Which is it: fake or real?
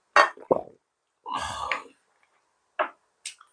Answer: real